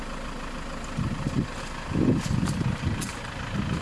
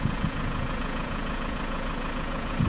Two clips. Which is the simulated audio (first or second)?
second